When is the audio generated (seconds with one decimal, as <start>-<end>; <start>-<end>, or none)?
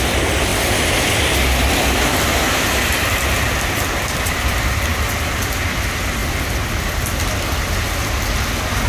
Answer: 0.5-4.9; 6.2-6.7